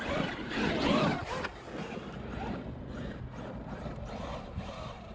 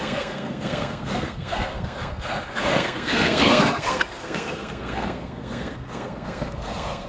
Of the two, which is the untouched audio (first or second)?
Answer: first